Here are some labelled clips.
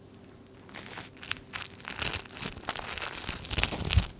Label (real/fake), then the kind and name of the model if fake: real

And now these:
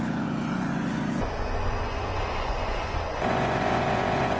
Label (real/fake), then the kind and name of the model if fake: fake, vocoder, Vocos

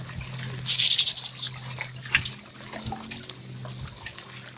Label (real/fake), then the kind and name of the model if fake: real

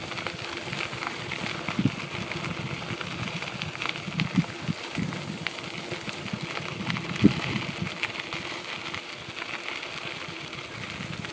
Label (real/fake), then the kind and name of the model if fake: real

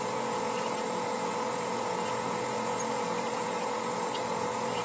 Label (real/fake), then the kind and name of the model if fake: fake, vocoder, Vocos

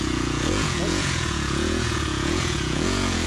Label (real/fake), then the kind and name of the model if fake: fake, vocoder, Vocos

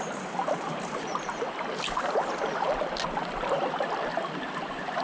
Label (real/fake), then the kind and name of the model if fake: real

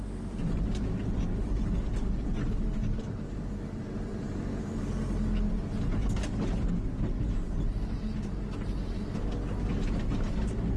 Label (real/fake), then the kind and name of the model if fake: real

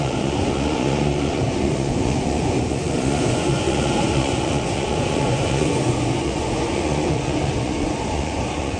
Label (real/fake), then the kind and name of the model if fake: fake, vocoder, Vocos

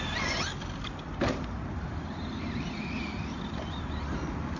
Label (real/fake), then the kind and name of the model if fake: real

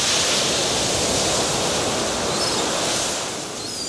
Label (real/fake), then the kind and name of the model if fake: real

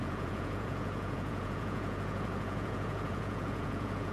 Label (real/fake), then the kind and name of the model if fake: fake, vocoder, Vocos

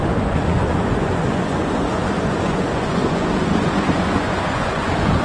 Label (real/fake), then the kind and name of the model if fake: fake, vocoder, Vocos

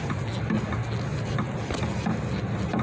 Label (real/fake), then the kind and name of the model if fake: real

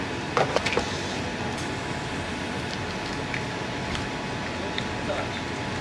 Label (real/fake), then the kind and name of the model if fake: real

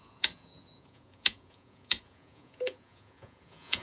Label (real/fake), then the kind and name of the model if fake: fake, vocoder, Vocos